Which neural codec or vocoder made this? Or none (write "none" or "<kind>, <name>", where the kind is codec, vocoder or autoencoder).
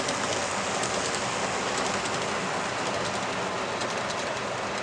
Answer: none